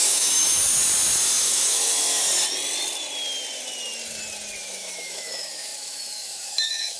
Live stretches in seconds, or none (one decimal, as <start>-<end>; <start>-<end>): 0.8-1.4; 1.9-4.6